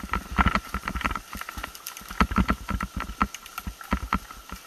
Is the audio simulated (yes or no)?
no